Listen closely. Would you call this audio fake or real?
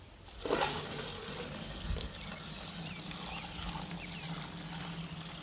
real